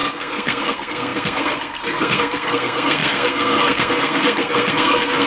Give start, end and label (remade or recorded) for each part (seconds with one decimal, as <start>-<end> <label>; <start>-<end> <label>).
0.0-5.3 remade